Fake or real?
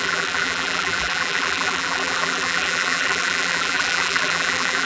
fake